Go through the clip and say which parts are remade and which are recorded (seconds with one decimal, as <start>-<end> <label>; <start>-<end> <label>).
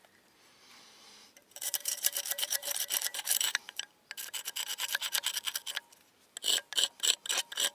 0.0-0.7 recorded; 0.7-4.0 remade; 4.0-7.7 recorded